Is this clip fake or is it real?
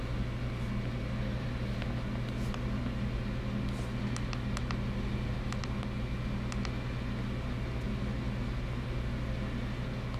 real